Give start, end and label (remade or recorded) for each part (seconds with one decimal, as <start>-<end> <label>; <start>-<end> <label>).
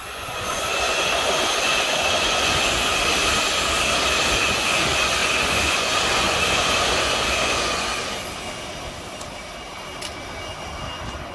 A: 0.0-2.9 remade; 2.9-4.4 recorded; 4.4-8.0 remade; 8.0-11.3 recorded